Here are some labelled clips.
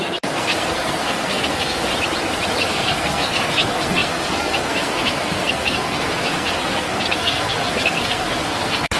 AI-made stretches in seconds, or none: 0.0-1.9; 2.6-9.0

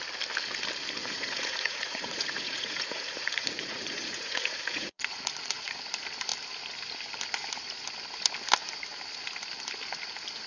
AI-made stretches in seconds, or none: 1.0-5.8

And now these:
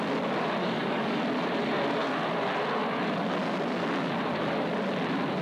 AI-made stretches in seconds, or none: 0.6-1.2

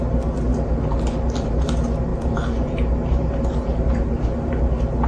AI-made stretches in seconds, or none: 0.5-1.7; 2.1-4.6

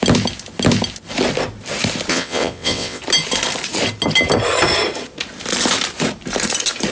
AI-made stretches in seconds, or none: 2.1-3.0

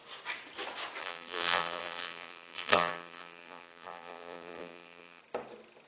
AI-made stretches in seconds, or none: 1.0-5.2

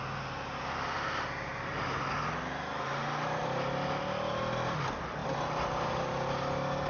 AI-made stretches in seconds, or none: none